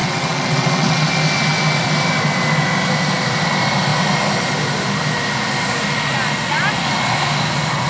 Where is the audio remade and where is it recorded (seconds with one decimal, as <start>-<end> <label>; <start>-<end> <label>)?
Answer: 0.0-1.1 remade; 1.1-7.9 recorded